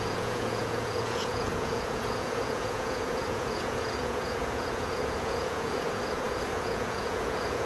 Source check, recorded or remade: remade